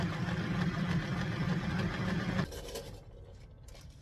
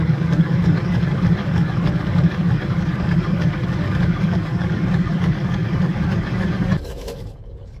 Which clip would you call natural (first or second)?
first